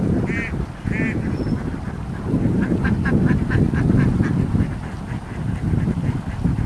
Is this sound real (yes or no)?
yes